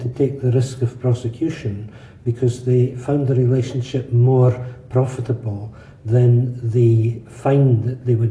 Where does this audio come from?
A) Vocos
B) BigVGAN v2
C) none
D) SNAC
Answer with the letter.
C